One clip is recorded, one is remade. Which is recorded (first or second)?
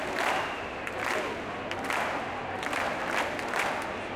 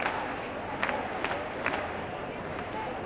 first